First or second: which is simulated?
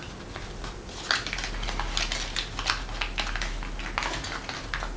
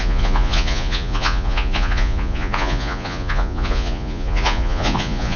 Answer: second